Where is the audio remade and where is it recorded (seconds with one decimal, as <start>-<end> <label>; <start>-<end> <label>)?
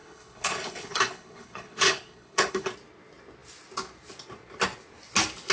0.0-2.7 remade; 2.7-5.5 recorded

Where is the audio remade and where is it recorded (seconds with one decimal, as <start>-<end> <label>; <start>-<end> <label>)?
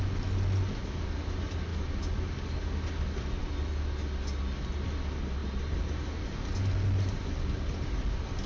0.0-8.5 recorded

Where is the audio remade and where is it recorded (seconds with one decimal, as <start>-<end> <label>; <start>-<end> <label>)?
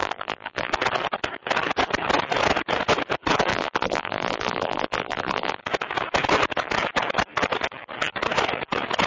0.0-0.7 remade; 0.7-3.5 recorded; 3.5-5.6 remade; 5.6-9.1 recorded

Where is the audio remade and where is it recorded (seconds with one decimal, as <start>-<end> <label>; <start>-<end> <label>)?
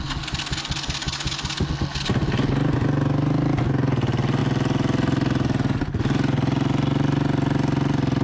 0.0-8.2 recorded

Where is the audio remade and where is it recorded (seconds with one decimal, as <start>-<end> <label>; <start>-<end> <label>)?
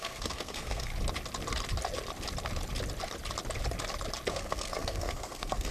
0.0-0.9 remade; 0.9-4.3 recorded; 4.3-5.7 remade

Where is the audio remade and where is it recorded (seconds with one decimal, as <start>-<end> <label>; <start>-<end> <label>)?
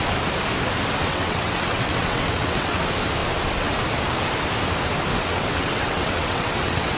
0.0-1.0 recorded; 1.0-2.8 remade; 2.8-5.1 recorded; 5.1-7.0 remade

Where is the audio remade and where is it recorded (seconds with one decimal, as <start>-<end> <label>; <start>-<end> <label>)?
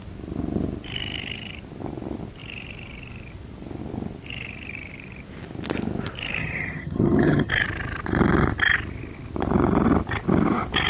0.0-6.4 recorded; 6.4-7.5 remade; 7.5-10.9 recorded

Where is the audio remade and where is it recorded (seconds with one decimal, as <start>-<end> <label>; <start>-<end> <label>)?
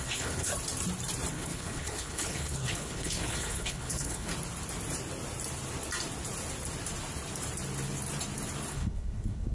0.0-0.5 remade; 0.5-1.3 recorded; 1.3-4.3 remade; 4.3-8.7 recorded; 8.7-9.5 remade